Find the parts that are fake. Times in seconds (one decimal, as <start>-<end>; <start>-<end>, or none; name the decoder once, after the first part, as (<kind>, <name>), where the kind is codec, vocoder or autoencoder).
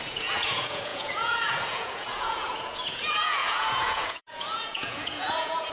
0.0-5.7 (vocoder, Vocos)